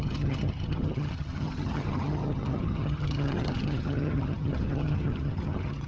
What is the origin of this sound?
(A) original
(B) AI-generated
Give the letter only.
B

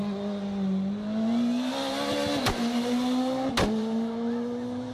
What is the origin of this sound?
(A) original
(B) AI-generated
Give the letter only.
A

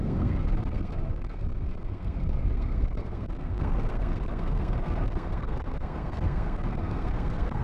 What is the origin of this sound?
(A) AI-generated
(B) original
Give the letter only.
A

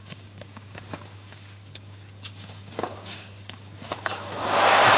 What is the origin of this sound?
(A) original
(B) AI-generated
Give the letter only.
B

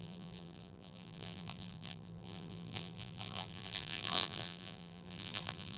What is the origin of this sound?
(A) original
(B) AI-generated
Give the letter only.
B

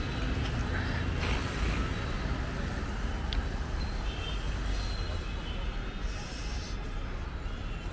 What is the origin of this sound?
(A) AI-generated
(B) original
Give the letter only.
B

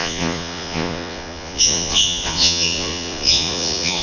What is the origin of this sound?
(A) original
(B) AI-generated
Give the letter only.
B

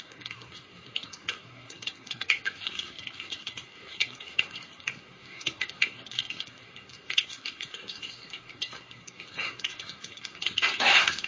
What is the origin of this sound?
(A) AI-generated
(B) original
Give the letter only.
A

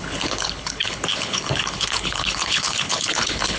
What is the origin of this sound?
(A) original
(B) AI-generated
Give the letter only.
B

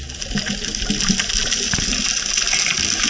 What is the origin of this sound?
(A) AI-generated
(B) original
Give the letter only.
B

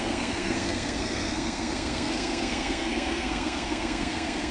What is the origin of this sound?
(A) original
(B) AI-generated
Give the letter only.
B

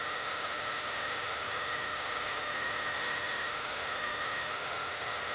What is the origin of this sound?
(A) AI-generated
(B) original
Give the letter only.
A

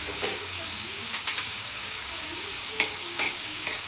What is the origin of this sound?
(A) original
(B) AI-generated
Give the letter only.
B